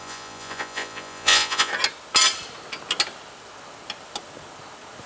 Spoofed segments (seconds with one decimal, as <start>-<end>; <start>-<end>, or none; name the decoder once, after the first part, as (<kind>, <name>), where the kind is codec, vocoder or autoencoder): 0.0-1.7 (vocoder, Vocos)

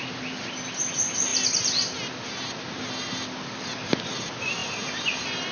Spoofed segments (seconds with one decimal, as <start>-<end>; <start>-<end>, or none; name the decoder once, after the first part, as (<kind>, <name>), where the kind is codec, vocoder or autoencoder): none

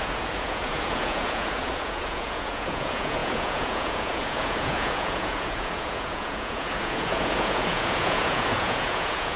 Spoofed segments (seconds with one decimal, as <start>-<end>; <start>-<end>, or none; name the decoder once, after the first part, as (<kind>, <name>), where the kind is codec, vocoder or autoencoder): 0.0-9.4 (vocoder, Vocos)